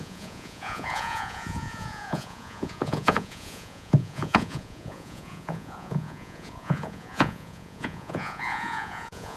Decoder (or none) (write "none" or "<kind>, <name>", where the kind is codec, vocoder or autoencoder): vocoder, Vocos